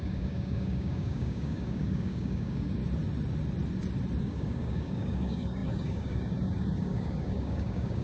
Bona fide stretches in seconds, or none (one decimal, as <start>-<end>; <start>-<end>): 2.8-4.2